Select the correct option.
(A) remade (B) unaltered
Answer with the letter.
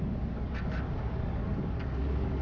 A